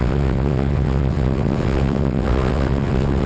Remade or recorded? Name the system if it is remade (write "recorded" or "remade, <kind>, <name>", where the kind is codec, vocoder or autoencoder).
remade, vocoder, WaveNeXt